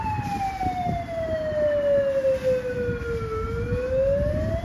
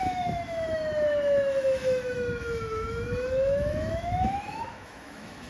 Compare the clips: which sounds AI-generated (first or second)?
second